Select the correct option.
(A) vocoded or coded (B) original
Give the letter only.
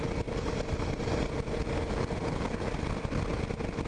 B